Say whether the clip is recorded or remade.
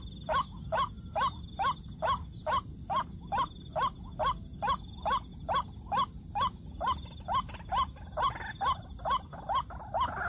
recorded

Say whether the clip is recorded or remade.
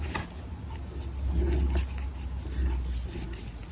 recorded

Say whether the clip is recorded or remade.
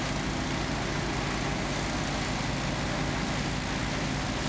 recorded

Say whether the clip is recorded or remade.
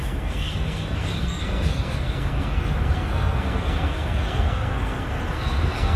remade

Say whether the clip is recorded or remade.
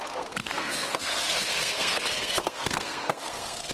remade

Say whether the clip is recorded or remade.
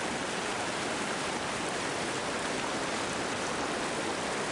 recorded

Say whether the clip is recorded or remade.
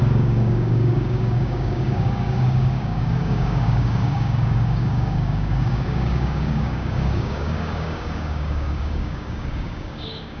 remade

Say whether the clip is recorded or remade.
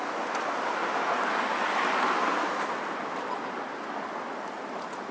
recorded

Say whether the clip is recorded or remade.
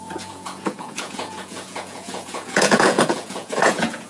remade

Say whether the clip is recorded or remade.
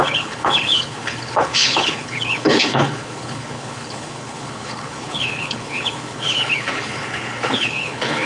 remade